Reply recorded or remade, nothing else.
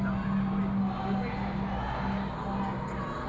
recorded